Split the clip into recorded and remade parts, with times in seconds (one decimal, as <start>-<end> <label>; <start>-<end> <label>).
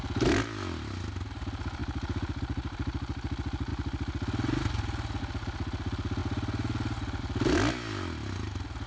0.0-8.9 recorded